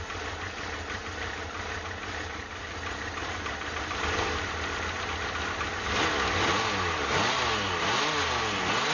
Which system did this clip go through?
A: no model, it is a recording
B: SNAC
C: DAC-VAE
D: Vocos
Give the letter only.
A